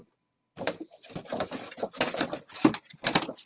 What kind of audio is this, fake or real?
real